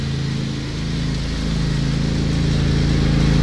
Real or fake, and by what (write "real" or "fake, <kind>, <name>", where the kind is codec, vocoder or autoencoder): real